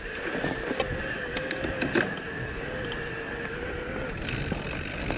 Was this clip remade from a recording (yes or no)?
no